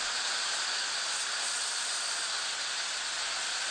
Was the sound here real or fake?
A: real